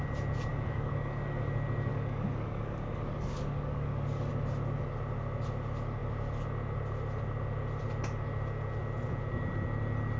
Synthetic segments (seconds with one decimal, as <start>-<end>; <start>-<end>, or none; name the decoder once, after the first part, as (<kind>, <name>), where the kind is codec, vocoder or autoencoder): 0.5-1.5 (codec, DAC); 1.9-4.3